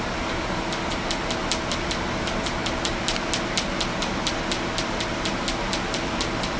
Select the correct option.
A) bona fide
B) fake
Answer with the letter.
A